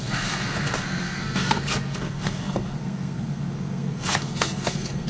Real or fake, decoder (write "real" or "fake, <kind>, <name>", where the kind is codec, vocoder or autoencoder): fake, codec, SNAC